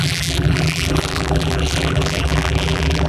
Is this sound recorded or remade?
remade